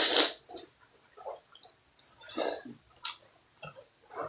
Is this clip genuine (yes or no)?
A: yes